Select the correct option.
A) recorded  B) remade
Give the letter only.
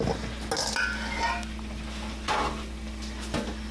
A